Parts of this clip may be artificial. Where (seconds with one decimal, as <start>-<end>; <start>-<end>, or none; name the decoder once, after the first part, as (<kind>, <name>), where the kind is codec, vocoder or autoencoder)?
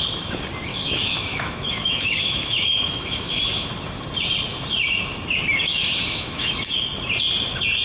0.7-3.7 (autoencoder, DAC-VAE); 5.7-6.5